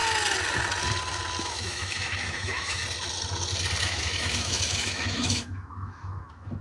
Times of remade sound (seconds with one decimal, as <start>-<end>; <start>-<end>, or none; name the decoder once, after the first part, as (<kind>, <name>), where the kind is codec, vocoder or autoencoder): 1.4-2.8 (autoencoder, DAC-VAE); 3.8-6.6